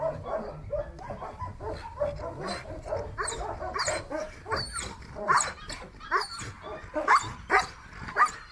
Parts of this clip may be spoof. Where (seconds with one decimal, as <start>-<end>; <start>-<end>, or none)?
none